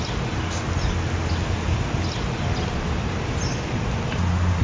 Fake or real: real